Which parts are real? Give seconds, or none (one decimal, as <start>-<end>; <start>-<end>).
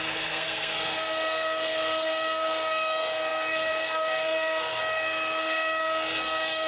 none